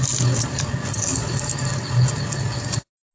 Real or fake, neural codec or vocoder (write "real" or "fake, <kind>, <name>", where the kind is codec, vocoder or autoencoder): real